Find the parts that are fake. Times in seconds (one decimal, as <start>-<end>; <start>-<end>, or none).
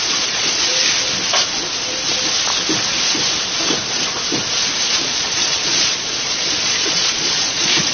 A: 0.0-0.7; 4.8-7.9